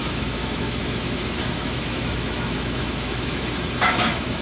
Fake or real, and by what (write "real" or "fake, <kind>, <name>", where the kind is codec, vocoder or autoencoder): fake, autoencoder, DAC-VAE